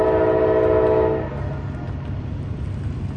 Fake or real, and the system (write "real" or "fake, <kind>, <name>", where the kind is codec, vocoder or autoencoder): real